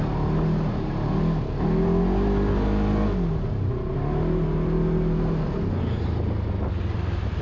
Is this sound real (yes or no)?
yes